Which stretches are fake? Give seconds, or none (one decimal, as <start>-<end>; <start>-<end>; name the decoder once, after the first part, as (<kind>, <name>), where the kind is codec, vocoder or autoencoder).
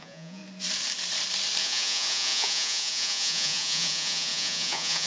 0.0-0.4 (vocoder, Vocos); 1.6-5.1